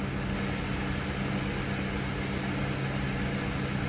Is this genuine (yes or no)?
yes